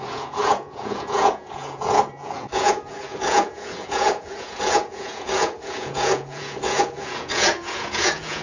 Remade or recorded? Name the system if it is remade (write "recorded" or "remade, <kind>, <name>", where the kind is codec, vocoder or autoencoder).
remade, vocoder, Vocos